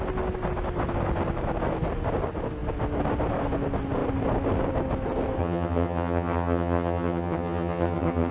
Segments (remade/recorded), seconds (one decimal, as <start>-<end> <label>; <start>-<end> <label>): 0.0-5.4 recorded; 5.4-8.3 remade